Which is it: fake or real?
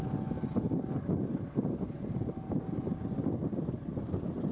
real